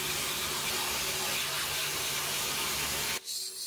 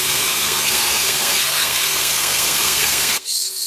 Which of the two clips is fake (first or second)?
second